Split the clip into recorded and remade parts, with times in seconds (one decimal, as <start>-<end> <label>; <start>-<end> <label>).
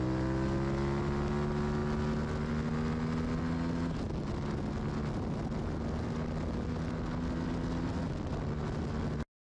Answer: 0.0-9.5 recorded